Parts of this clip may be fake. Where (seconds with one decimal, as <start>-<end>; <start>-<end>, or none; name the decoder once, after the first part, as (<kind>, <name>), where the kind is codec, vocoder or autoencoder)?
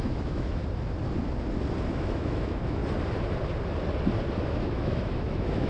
0.0-0.6 (autoencoder, DAC-VAE); 1.9-2.8; 4.4-5.7